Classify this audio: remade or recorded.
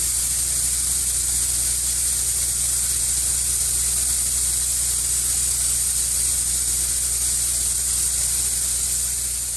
recorded